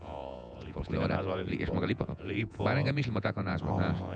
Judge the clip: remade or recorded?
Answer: remade